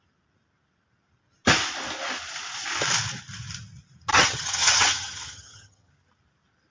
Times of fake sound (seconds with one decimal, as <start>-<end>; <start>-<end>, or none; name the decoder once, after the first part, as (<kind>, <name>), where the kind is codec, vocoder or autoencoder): 4.1-5.9 (vocoder, HiFi-GAN)